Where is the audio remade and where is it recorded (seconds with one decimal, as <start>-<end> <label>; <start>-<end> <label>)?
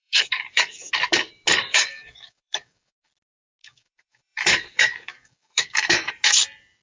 0.0-0.9 remade; 0.9-1.7 recorded; 1.7-3.1 remade; 3.1-3.6 recorded; 3.6-6.1 remade; 6.1-6.8 recorded